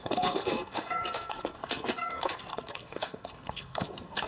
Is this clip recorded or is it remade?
remade